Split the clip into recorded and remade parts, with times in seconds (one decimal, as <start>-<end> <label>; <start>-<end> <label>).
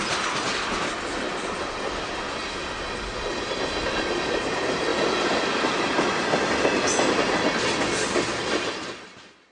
0.0-9.5 recorded